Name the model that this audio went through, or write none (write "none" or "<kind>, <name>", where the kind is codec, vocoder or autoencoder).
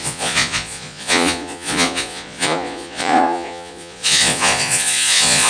vocoder, Vocos